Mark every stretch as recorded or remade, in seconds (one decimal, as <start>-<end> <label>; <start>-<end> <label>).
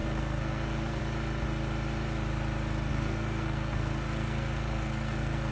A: 0.0-1.0 remade; 1.0-2.9 recorded; 2.9-5.5 remade